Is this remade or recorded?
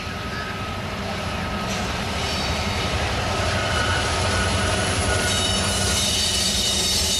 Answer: remade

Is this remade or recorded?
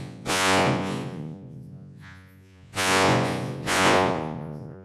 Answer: remade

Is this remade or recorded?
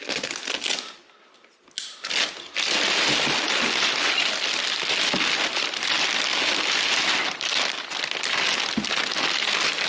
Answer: recorded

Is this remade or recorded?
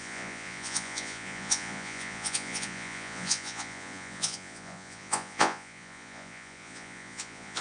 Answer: remade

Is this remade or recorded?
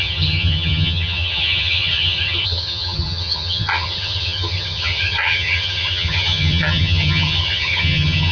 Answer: remade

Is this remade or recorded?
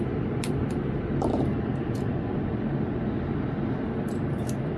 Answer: remade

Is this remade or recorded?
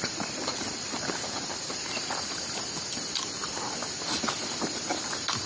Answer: recorded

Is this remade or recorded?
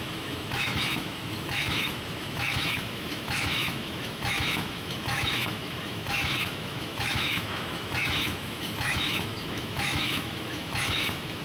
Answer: remade